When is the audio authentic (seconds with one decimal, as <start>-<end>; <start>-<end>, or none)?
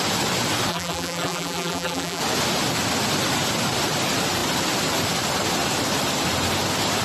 0.0-0.7; 2.2-7.0